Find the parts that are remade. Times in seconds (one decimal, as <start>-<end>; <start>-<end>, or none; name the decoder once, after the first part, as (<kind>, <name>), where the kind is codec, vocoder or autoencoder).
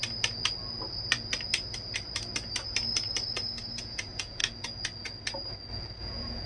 3.8-4.4 (vocoder, Vocos); 6.0-6.5